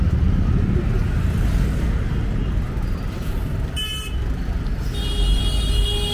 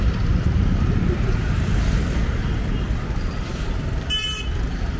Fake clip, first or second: second